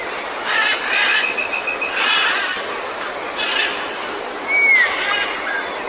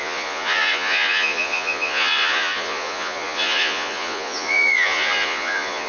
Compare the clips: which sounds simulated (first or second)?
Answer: second